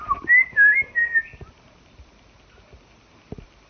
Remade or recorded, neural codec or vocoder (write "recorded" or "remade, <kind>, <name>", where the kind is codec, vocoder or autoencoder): recorded